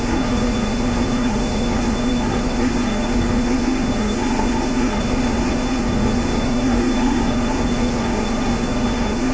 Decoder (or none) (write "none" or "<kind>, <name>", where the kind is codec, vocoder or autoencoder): codec, SNAC